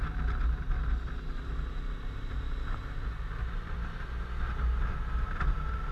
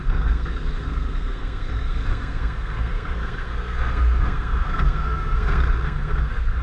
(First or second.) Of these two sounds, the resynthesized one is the second